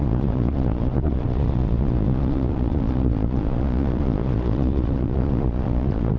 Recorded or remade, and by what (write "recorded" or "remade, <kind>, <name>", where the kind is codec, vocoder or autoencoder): remade, vocoder, Vocos